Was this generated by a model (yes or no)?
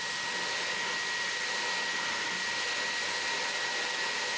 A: no